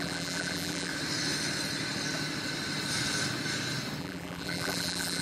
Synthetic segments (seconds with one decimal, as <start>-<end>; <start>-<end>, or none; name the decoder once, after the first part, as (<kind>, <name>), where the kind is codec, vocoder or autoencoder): 0.0-0.9 (vocoder, BigVGAN v2); 4.0-5.2

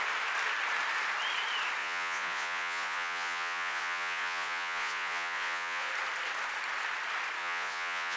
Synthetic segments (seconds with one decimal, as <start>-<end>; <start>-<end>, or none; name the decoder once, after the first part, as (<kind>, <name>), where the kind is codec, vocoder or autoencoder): 1.8-5.9 (vocoder, Vocos); 7.4-8.2

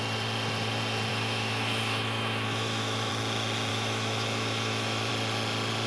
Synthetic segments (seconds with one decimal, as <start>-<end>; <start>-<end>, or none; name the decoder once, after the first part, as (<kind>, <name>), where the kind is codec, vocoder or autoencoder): 1.1-3.1 (autoencoder, DAC-VAE); 3.7-5.1

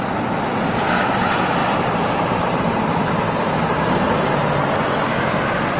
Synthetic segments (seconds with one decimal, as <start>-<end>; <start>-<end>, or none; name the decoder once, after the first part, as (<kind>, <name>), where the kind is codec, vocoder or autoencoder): 1.6-4.5 (vocoder, BigVGAN v2)

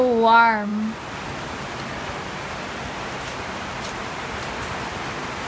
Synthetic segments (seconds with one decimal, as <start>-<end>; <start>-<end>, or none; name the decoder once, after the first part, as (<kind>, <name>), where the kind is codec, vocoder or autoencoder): none